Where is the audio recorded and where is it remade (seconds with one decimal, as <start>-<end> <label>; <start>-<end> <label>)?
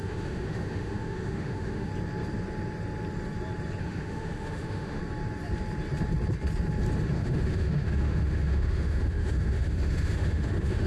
0.0-1.9 remade; 1.9-3.8 recorded; 3.8-5.0 remade; 5.0-7.1 recorded; 7.1-10.9 remade